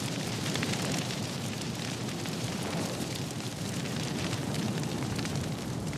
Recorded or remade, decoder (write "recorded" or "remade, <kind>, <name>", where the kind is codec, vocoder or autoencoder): remade, vocoder, BigVGAN v2